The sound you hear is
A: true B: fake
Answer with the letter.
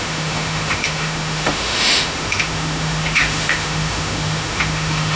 B